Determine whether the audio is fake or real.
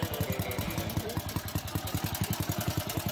real